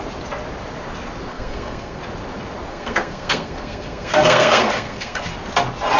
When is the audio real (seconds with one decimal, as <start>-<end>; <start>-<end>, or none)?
0.0-1.3; 2.0-2.7; 5.2-6.0